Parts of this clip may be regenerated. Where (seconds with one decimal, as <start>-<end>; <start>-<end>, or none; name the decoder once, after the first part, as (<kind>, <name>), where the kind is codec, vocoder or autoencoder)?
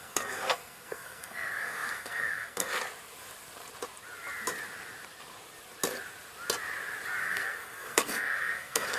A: 0.0-2.8 (codec, SNAC); 7.2-9.0